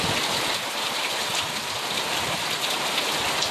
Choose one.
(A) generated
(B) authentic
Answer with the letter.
B